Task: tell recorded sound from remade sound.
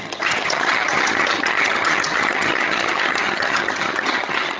remade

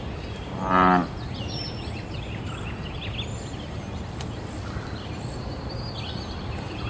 recorded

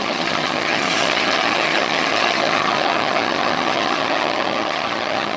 remade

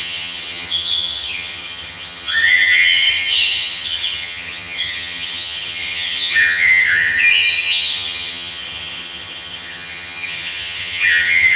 remade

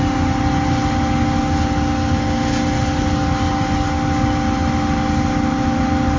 recorded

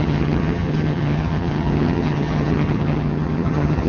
remade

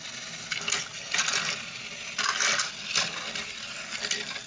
recorded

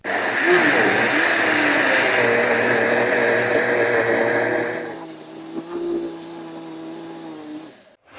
recorded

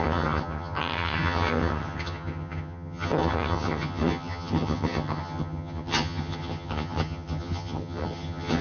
remade